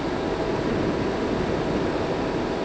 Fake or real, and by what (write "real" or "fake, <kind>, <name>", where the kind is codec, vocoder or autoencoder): real